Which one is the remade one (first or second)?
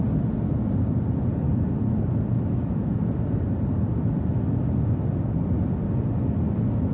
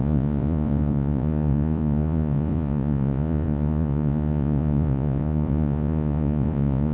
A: second